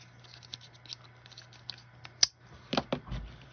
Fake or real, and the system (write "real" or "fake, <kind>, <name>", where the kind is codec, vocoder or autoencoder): real